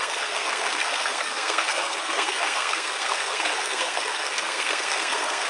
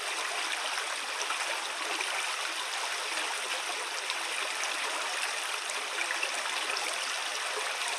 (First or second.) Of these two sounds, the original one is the second